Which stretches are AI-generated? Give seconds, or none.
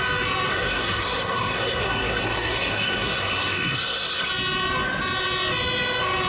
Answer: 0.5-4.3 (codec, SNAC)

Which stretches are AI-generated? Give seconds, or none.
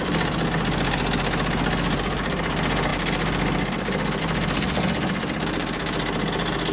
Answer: none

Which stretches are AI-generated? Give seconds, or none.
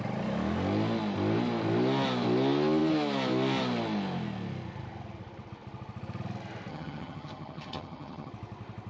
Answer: 6.7-8.3 (vocoder, HiFi-GAN)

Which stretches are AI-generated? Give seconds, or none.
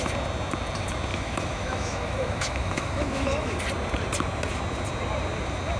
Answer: 1.1-3.6 (autoencoder, DAC-VAE)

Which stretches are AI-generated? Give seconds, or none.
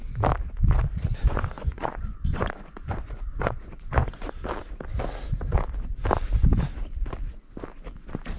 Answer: 1.2-4.3 (vocoder, Vocos)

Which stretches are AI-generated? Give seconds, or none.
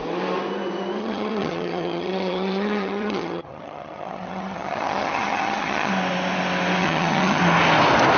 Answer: 1.0-5.9 (vocoder, HiFi-GAN); 6.8-7.4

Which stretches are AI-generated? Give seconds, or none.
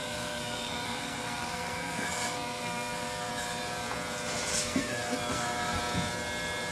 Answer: 0.0-3.3 (codec, SNAC); 4.5-5.8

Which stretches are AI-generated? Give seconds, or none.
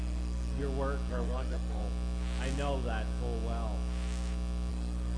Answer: 0.0-0.6 (codec, SNAC); 1.1-1.8; 4.7-5.2